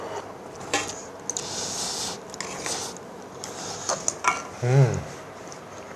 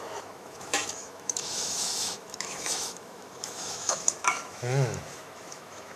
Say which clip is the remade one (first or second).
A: second